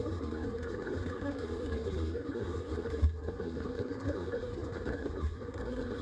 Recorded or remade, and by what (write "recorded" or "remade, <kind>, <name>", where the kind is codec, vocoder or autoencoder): remade, codec, SNAC